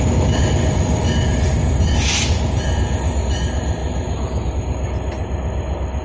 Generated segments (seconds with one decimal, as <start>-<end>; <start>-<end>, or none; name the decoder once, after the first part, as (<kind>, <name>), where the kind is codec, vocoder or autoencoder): 3.8-4.5 (vocoder, BigVGAN v2)